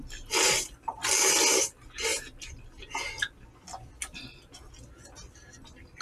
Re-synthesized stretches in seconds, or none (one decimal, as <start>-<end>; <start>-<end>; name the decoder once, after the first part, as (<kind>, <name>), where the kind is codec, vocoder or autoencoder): none